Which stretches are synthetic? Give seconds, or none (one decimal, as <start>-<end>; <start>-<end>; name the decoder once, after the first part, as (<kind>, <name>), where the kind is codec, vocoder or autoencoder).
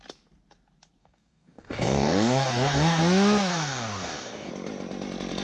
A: 1.0-3.0 (codec, DAC); 3.5-4.5